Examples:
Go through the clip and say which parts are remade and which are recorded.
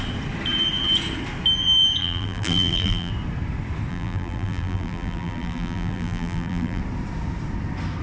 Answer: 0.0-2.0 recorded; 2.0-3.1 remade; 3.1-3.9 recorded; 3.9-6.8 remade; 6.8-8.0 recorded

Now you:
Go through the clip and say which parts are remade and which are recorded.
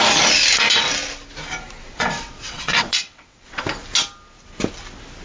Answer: 0.0-1.8 recorded; 1.8-3.6 remade; 3.6-5.2 recorded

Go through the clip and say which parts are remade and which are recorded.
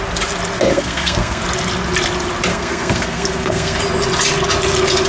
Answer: 0.0-0.7 recorded; 0.7-1.4 remade; 1.4-2.5 recorded; 2.5-3.8 remade; 3.8-5.1 recorded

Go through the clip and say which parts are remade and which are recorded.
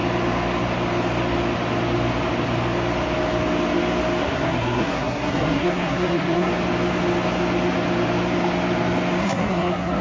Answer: 0.0-4.2 recorded; 4.2-6.5 remade; 6.5-9.2 recorded; 9.2-10.0 remade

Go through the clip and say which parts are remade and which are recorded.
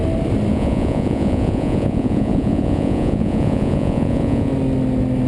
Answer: 0.0-0.5 recorded; 0.5-4.5 remade; 4.5-5.3 recorded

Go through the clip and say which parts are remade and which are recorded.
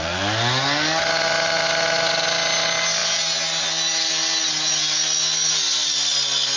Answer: 0.0-6.6 recorded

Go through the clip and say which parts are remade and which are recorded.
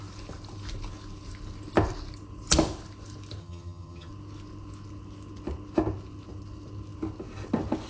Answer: 0.0-3.4 recorded; 3.4-4.1 remade; 4.1-7.9 recorded